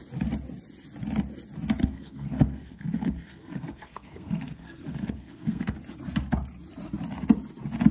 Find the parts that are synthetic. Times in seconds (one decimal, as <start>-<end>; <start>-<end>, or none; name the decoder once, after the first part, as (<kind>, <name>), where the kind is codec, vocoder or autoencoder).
1.8-5.8 (codec, SNAC)